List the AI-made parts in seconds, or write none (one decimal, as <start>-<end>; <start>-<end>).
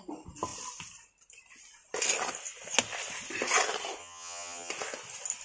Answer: 4.0-4.7